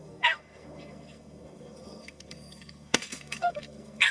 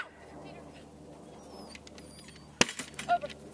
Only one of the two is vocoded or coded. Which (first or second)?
first